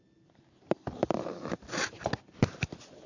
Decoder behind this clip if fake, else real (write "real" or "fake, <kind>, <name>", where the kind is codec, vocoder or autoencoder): real